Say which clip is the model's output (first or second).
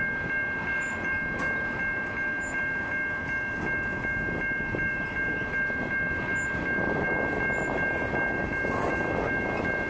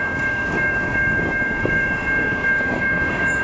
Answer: second